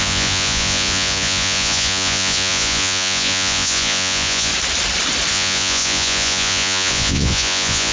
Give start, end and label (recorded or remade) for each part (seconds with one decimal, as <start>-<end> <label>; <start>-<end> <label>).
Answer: 0.0-4.5 remade; 4.5-5.3 recorded; 5.3-7.9 remade